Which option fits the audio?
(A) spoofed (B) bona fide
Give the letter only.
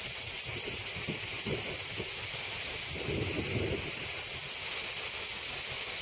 B